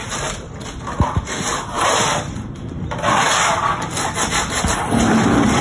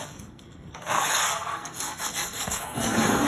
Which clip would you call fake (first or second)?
second